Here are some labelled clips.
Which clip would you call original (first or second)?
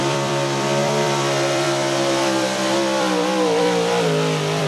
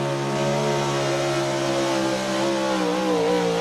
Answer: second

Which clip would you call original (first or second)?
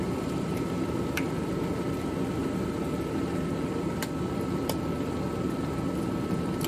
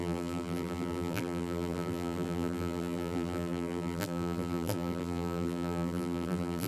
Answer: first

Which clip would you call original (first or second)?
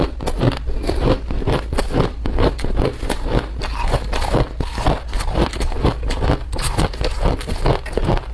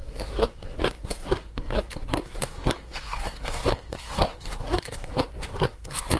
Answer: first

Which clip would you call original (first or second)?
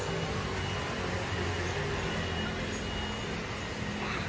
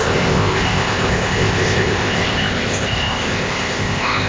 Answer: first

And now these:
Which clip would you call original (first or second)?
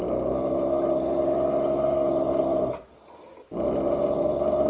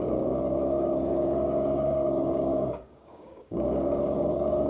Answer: first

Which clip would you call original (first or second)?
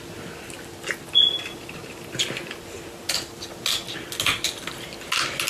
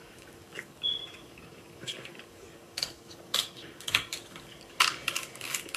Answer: first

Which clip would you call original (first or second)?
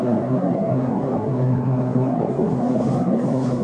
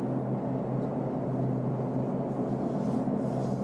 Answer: second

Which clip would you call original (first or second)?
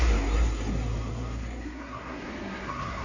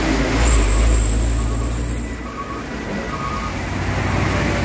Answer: second